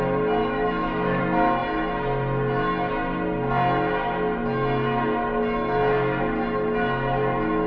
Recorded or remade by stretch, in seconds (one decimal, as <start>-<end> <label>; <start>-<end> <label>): 0.0-0.4 recorded; 0.4-1.2 remade; 1.2-7.7 recorded